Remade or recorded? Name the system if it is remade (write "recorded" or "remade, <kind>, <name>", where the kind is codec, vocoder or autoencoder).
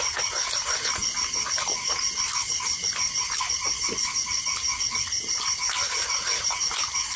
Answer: recorded